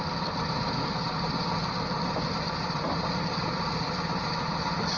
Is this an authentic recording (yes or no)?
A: yes